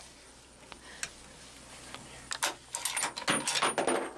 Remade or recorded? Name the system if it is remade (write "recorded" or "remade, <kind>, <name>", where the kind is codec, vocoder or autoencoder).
recorded